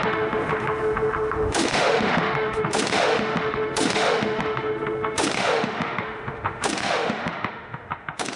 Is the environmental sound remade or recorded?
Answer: remade